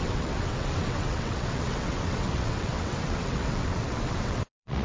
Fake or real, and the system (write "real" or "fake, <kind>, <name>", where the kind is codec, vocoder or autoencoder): fake, vocoder, WaveNeXt